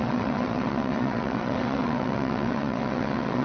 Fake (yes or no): yes